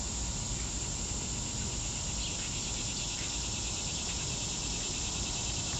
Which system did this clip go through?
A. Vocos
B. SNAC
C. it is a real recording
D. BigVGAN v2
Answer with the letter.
C